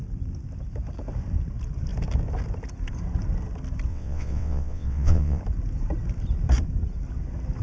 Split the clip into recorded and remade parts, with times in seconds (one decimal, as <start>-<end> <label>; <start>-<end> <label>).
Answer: 0.0-3.9 recorded; 3.9-5.4 remade; 5.4-7.6 recorded

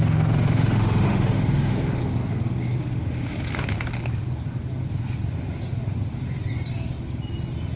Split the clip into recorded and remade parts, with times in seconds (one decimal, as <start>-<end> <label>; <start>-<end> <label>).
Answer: 0.0-2.0 remade; 2.0-2.8 recorded; 2.8-3.5 remade; 3.5-7.8 recorded

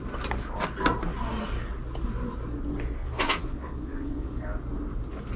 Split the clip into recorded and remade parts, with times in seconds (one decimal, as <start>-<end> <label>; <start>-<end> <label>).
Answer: 0.0-3.0 recorded; 3.0-4.3 remade; 4.3-5.4 recorded

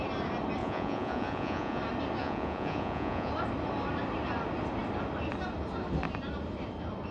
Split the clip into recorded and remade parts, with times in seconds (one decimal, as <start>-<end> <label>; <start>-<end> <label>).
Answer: 0.0-0.6 recorded; 0.6-1.8 remade; 1.8-2.2 recorded; 2.2-3.3 remade; 3.3-7.1 recorded

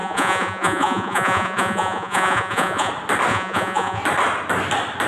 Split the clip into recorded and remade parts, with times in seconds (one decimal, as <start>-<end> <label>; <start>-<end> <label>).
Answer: 0.0-2.9 remade; 2.9-3.3 recorded; 3.3-4.0 remade; 4.0-5.1 recorded

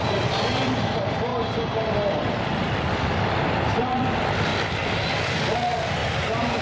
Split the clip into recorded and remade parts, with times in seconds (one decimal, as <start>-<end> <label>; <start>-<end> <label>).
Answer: 0.0-1.3 remade; 1.3-2.1 recorded; 2.1-4.5 remade; 4.5-5.2 recorded; 5.2-6.6 remade